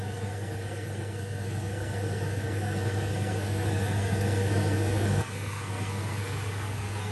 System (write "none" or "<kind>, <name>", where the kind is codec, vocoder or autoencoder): codec, SNAC